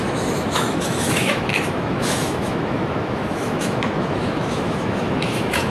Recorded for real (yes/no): no